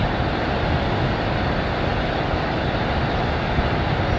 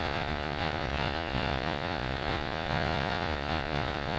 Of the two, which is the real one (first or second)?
first